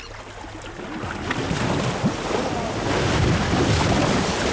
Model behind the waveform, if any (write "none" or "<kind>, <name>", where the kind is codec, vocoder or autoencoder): none